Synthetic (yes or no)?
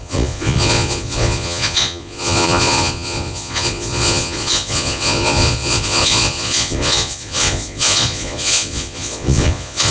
yes